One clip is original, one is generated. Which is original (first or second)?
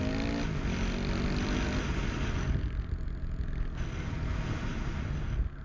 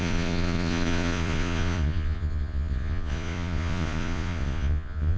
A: first